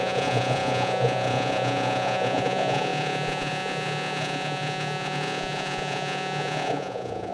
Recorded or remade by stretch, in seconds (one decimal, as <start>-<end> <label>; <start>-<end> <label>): 0.0-7.3 remade